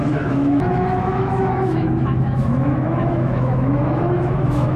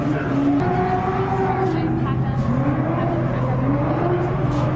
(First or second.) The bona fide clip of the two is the second